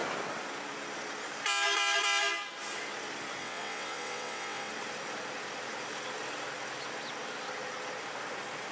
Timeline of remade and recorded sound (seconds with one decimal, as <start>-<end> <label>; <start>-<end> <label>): 0.0-3.4 recorded; 3.4-4.7 remade; 4.7-8.7 recorded